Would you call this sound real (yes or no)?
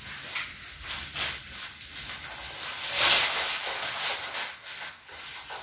yes